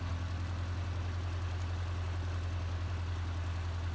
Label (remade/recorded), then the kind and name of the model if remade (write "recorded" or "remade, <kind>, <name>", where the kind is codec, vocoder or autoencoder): recorded